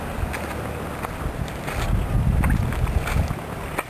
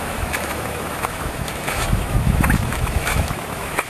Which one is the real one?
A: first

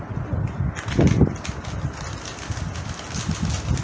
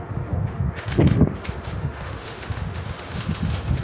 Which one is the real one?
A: first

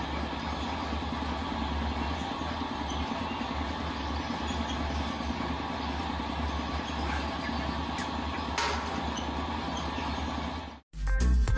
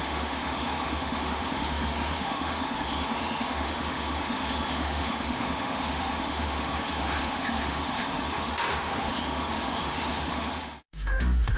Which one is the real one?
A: first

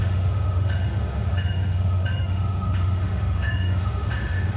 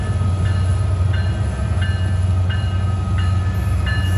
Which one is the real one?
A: second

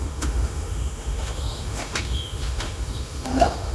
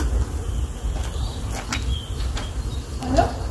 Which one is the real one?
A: second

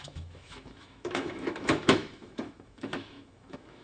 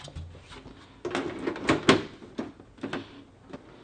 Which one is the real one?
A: second